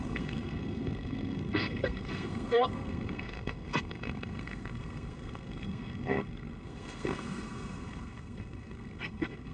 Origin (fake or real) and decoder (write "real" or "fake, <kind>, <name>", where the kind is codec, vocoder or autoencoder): fake, codec, SNAC